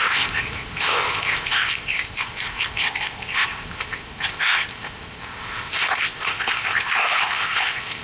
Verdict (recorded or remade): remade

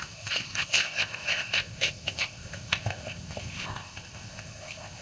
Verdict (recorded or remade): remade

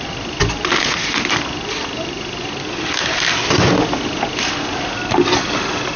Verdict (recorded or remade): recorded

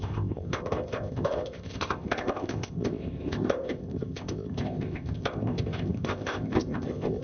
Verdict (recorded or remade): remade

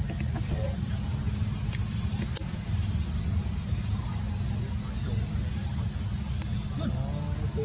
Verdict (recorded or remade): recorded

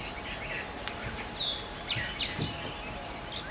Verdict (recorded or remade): recorded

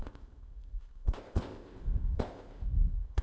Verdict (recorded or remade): remade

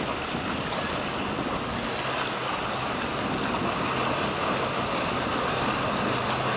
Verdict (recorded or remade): recorded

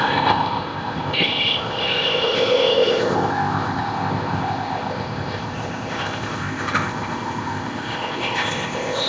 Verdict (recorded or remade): remade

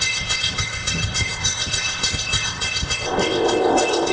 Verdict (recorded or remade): remade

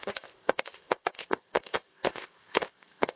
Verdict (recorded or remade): remade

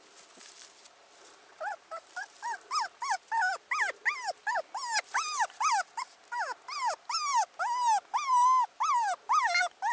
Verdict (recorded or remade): recorded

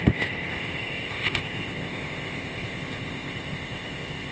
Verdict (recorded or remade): remade